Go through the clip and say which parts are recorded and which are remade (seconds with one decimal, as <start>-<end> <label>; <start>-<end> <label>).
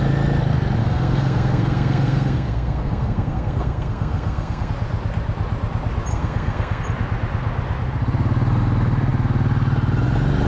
0.0-0.8 recorded; 0.8-4.7 remade; 4.7-6.1 recorded; 6.1-6.8 remade; 6.8-10.5 recorded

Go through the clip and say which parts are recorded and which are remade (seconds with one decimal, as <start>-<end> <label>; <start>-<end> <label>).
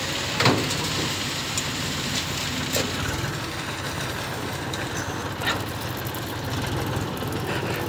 0.0-7.9 recorded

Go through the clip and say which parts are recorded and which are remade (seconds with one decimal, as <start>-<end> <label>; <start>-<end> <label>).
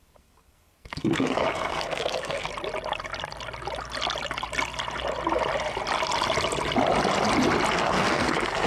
0.0-2.5 remade; 2.5-7.7 recorded; 7.7-8.7 remade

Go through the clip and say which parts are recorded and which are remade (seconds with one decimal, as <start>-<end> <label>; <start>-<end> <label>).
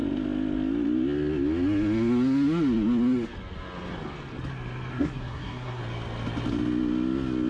0.0-4.9 recorded; 4.9-5.8 remade; 5.8-7.5 recorded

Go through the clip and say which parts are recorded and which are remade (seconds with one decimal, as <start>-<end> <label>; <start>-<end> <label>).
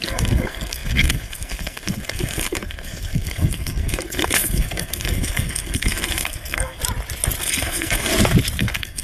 0.0-6.8 remade; 6.8-7.4 recorded; 7.4-8.1 remade; 8.1-8.6 recorded; 8.6-9.0 remade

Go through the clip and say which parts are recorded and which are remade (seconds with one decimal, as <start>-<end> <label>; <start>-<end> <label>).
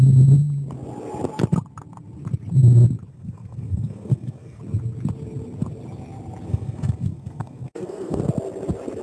0.0-3.1 recorded; 3.1-4.6 remade; 4.6-6.5 recorded; 6.5-8.2 remade; 8.2-9.0 recorded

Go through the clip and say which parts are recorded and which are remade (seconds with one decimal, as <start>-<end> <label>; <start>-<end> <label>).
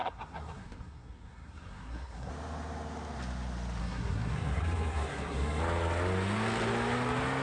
0.0-2.3 remade; 2.3-3.8 recorded; 3.8-5.6 remade; 5.6-7.4 recorded